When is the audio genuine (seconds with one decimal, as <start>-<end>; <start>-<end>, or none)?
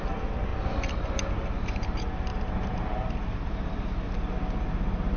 0.0-2.3; 3.1-5.2